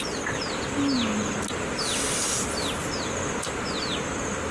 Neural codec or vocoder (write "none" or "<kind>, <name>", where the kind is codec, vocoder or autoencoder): none